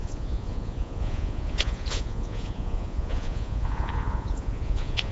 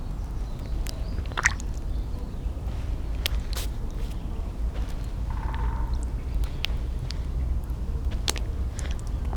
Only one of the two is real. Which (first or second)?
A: second